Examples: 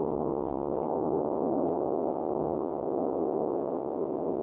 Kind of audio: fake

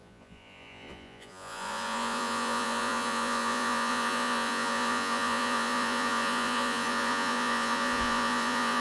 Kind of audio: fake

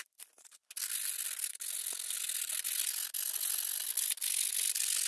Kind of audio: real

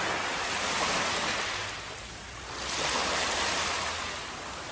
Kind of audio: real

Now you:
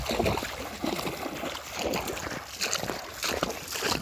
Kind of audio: real